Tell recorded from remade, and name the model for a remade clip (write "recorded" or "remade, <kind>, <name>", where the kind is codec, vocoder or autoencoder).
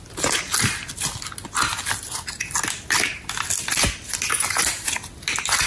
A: recorded